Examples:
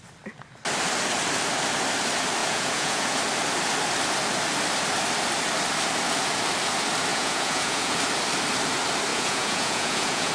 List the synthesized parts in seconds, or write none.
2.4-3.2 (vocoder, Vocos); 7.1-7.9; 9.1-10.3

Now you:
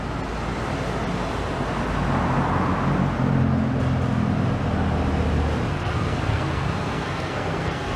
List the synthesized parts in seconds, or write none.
5.7-8.0 (codec, SNAC)

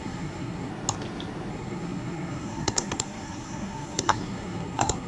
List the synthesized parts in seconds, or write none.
0.0-0.7 (codec, SNAC); 1.5-5.1

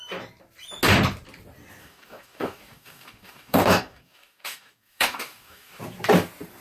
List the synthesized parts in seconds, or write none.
1.8-5.8 (codec, DAC)

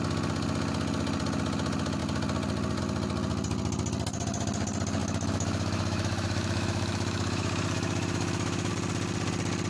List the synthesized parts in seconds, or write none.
5.0-8.7 (autoencoder, DAC-VAE)